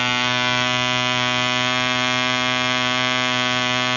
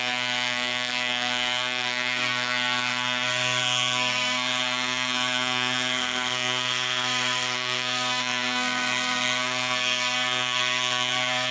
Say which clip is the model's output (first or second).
second